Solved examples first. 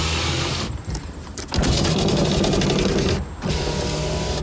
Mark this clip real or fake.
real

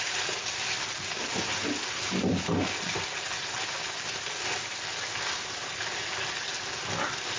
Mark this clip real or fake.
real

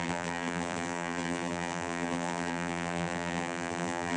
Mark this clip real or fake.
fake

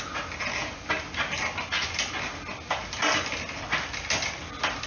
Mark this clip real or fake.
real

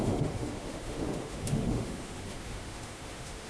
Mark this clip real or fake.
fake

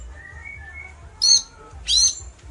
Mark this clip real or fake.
real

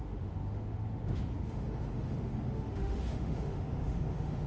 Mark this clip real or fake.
fake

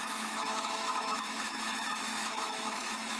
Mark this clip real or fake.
fake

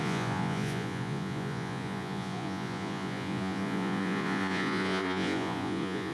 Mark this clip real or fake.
fake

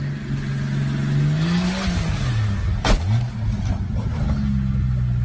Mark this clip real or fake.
real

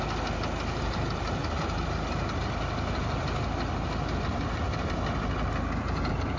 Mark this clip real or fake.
real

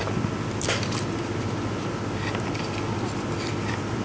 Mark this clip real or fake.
real